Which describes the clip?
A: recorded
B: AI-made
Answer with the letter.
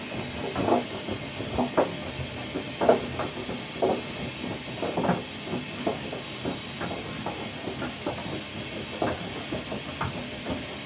A